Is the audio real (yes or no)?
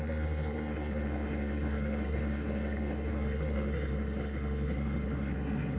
no